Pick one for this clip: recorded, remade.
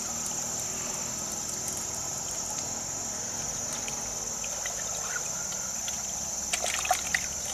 recorded